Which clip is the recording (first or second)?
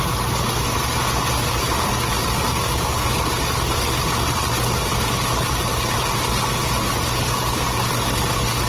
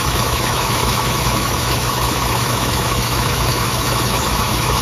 first